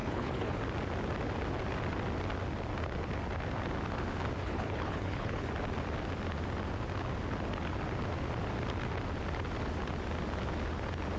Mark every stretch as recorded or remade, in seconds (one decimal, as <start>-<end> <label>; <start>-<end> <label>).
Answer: 0.0-0.6 remade; 0.6-4.4 recorded; 4.4-5.5 remade; 5.5-11.2 recorded